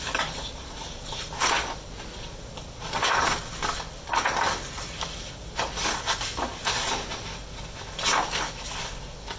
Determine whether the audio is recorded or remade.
recorded